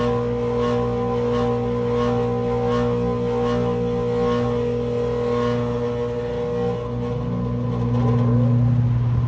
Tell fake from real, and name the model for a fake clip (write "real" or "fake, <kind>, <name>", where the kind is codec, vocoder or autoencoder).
real